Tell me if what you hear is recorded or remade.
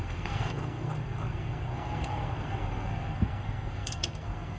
remade